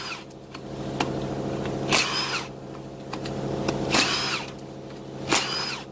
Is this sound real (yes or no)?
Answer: yes